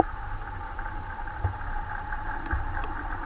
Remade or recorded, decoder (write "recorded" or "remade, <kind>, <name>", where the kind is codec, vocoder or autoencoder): recorded